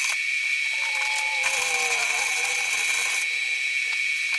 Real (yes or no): yes